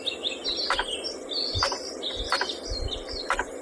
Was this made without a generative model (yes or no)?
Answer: yes